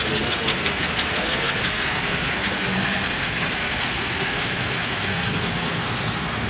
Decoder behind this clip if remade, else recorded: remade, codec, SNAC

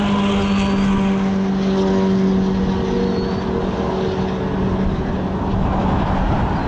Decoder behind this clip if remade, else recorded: recorded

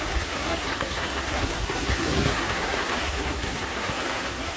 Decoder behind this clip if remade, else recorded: remade, codec, SNAC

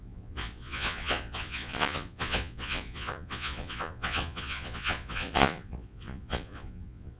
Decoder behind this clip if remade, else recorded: remade, vocoder, Vocos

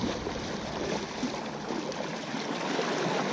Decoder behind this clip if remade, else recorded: remade, vocoder, BigVGAN v2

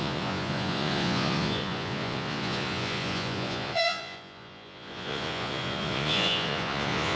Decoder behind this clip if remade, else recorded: remade, vocoder, Vocos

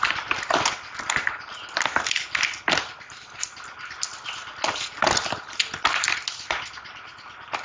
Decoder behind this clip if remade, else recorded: recorded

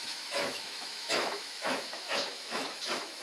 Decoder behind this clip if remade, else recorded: remade, autoencoder, DAC-VAE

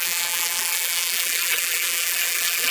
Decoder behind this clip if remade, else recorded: remade, vocoder, BigVGAN v2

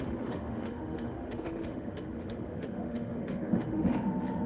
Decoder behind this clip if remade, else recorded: remade, autoencoder, DAC-VAE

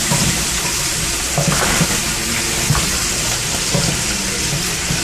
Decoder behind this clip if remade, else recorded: recorded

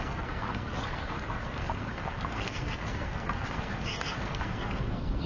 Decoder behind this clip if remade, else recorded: remade, codec, SNAC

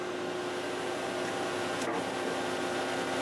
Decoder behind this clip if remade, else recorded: recorded